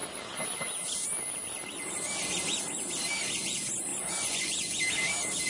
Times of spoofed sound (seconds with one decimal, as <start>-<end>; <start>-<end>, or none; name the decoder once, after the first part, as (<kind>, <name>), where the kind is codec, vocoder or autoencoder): 3.9-4.8 (vocoder, Vocos)